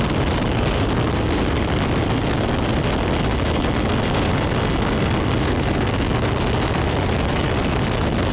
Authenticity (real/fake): real